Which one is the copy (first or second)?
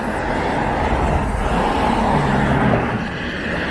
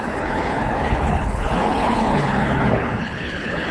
second